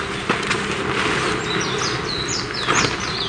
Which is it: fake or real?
real